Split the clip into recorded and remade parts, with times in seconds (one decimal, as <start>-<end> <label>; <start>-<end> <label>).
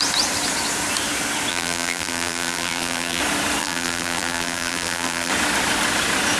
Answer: 0.0-1.5 recorded; 1.5-3.2 remade; 3.2-3.6 recorded; 3.6-5.3 remade; 5.3-6.4 recorded